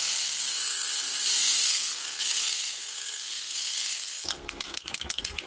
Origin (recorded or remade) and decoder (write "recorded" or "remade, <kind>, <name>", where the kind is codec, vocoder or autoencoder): remade, codec, SNAC